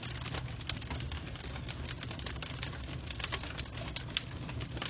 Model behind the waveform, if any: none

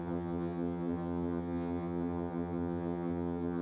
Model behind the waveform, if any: vocoder, HiFi-GAN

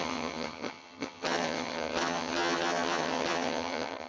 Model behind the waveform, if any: vocoder, HiFi-GAN